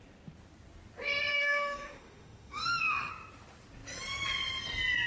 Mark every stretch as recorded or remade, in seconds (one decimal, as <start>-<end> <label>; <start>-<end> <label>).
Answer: 0.0-1.3 recorded; 1.3-3.1 remade; 3.1-5.1 recorded